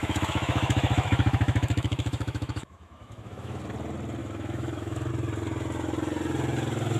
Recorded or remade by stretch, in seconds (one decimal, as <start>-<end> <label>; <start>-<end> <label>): 0.0-3.6 remade; 3.6-4.2 recorded; 4.2-5.1 remade; 5.1-7.0 recorded